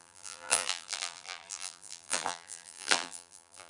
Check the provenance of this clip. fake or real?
fake